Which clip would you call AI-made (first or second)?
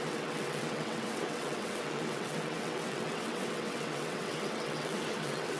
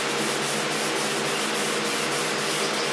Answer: first